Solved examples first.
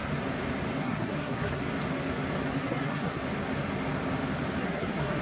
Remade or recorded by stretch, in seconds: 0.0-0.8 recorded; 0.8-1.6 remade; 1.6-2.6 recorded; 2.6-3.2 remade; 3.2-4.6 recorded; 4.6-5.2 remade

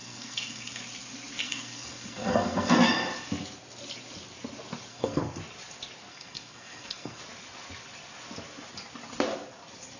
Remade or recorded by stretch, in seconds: 0.0-0.8 remade; 0.8-1.4 recorded; 1.4-2.9 remade; 2.9-4.9 recorded; 4.9-5.4 remade; 5.4-6.1 recorded; 6.1-7.2 remade; 7.2-10.0 recorded

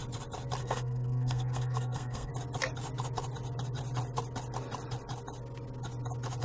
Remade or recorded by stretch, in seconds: 0.0-0.6 recorded; 0.6-2.3 remade; 2.3-6.4 recorded

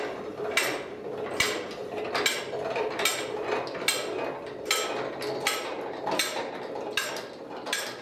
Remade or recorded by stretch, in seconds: 0.0-8.0 recorded